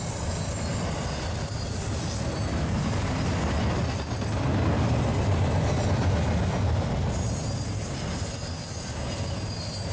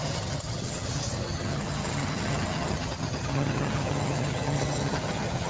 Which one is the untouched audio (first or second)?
first